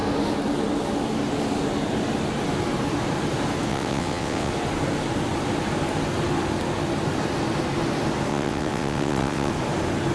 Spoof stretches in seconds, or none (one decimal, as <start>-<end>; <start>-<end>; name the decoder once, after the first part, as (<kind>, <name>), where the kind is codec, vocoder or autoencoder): 3.7-4.5 (vocoder, WaveNeXt); 8.3-9.5

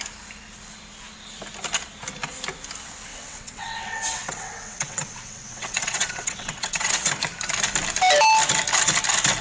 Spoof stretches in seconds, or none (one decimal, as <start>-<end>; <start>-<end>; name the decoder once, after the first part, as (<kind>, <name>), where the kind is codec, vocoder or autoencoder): 3.1-7.1 (vocoder, WaveNeXt)

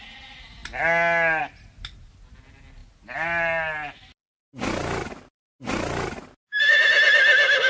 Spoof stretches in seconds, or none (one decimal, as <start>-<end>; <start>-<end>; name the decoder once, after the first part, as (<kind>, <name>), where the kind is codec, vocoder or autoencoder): none

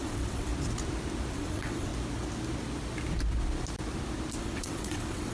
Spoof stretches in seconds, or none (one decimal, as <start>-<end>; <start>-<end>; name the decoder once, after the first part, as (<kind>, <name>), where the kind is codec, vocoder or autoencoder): 0.0-0.5 (vocoder, WaveNeXt); 1.3-1.9; 4.4-5.3

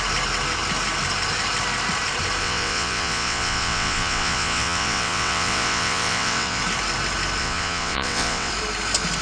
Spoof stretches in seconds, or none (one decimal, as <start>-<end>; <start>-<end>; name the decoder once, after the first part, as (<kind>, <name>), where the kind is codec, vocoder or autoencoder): 2.4-6.6 (vocoder, WaveNeXt); 7.4-8.5

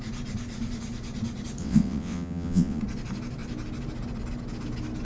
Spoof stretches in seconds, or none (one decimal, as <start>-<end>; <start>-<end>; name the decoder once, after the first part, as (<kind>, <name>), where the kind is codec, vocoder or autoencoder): 1.6-2.8 (vocoder, WaveNeXt)

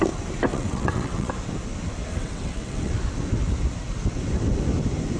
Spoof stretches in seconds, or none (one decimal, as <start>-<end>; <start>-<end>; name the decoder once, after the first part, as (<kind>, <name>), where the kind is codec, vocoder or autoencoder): 0.5-1.3 (vocoder, WaveNeXt); 2.1-2.9